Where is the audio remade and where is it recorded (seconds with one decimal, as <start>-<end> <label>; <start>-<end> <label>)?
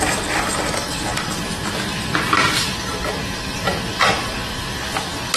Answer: 0.0-5.4 recorded